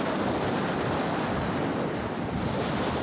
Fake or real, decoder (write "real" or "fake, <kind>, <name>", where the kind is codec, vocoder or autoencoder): real